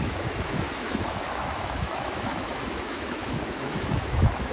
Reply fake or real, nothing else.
fake